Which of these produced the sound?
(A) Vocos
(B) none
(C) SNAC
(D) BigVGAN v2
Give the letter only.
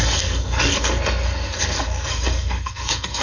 C